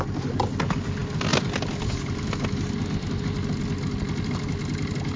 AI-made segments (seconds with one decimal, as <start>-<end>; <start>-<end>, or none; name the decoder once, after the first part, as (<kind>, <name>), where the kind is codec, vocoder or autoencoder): none